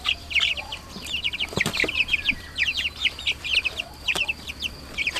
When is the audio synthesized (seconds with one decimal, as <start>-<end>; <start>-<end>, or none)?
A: 0.0-5.2